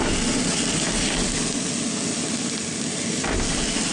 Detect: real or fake real